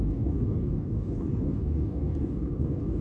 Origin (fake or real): fake